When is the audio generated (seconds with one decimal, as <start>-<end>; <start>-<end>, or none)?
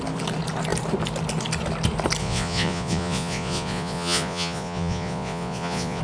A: 2.2-6.0